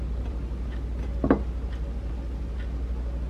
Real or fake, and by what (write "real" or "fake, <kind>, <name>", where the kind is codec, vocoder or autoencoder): real